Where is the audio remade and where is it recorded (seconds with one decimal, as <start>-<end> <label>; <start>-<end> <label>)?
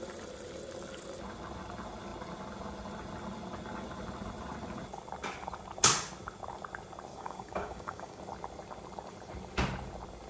0.0-7.1 recorded; 7.1-8.2 remade; 8.2-10.3 recorded